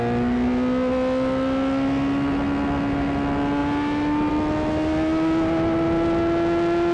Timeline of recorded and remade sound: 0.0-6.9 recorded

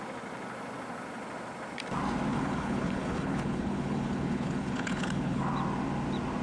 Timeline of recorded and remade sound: 0.0-2.3 recorded; 2.3-5.4 remade; 5.4-6.4 recorded

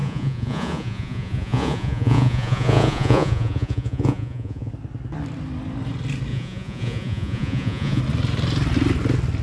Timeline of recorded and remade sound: 0.0-4.7 remade; 4.7-6.3 recorded; 6.3-8.0 remade; 8.0-9.4 recorded